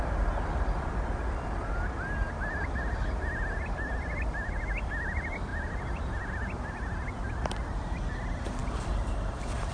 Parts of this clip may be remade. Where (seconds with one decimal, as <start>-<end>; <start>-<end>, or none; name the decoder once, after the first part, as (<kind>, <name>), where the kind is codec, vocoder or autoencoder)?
none